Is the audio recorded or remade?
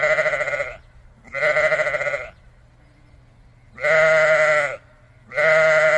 recorded